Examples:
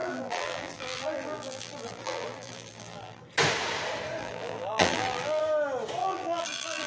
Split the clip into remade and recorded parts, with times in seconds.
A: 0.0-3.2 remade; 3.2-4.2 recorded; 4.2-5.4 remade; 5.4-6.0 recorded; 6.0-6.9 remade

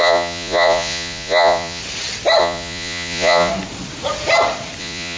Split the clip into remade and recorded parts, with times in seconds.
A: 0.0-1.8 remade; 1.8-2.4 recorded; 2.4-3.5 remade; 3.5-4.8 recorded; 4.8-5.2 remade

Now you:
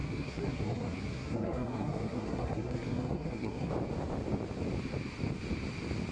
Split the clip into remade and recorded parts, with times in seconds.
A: 0.0-3.7 remade; 3.7-6.1 recorded

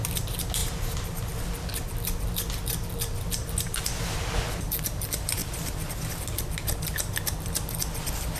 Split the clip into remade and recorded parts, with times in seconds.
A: 0.0-0.6 recorded; 0.6-1.4 remade; 1.4-5.4 recorded; 5.4-6.2 remade; 6.2-8.4 recorded

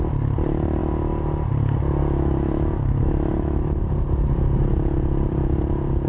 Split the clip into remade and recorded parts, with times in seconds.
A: 0.0-2.0 recorded; 2.0-3.9 remade; 3.9-6.1 recorded

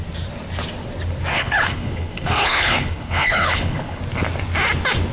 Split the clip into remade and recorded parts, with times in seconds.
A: 0.0-1.3 recorded; 1.3-4.0 remade; 4.0-5.1 recorded

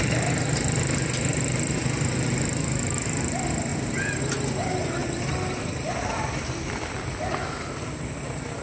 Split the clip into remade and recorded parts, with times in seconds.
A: 0.0-5.0 recorded; 5.0-7.1 remade; 7.1-8.6 recorded